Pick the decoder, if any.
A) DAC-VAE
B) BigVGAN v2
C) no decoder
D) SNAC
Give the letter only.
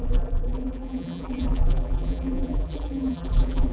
B